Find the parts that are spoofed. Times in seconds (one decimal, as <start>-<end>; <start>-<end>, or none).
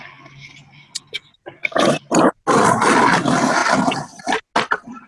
none